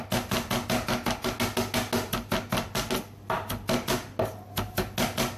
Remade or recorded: recorded